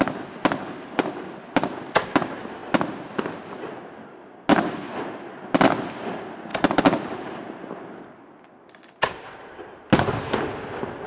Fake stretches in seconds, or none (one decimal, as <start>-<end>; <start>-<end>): 6.5-7.4